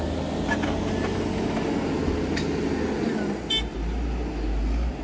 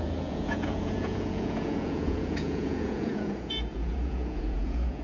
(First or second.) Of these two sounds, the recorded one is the first